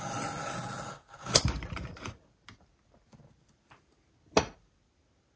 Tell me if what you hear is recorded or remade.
recorded